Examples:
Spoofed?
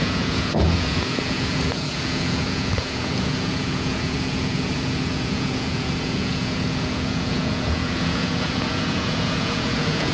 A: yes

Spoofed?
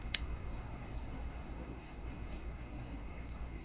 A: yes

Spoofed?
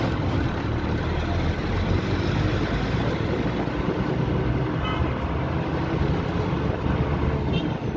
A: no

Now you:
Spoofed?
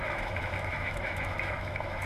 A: yes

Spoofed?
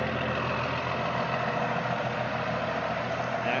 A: no